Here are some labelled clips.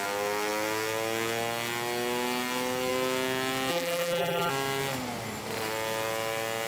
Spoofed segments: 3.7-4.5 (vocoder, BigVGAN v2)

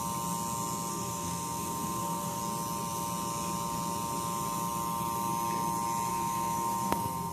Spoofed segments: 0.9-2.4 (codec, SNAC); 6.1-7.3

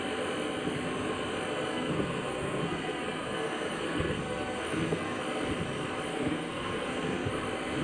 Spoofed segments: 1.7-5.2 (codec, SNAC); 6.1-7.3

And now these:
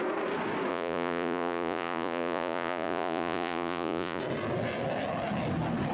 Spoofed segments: 0.7-4.2 (vocoder, Vocos)

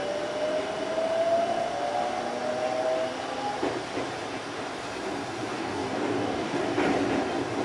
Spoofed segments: 5.5-6.6 (codec, DAC)